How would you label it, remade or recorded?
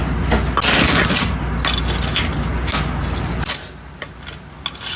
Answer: recorded